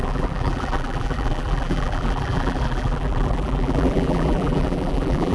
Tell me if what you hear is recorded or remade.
remade